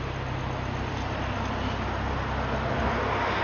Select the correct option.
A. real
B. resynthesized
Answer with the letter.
A